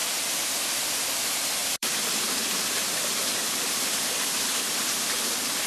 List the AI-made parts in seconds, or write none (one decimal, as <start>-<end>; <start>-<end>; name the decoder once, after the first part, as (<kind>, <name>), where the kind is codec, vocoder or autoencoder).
0.9-5.7 (vocoder, BigVGAN v2)

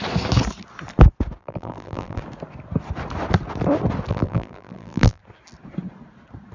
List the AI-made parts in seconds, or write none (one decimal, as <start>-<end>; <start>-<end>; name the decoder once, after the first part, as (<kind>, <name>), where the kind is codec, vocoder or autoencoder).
1.4-2.2 (vocoder, BigVGAN v2); 4.1-5.2